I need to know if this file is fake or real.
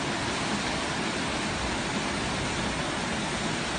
real